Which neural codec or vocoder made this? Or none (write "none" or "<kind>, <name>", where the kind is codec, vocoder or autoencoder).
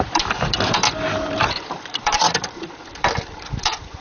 vocoder, BigVGAN v2